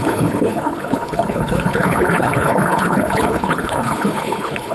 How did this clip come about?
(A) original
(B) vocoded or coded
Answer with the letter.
B